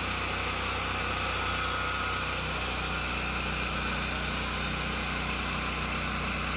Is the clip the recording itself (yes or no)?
yes